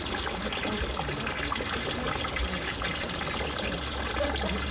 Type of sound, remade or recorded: recorded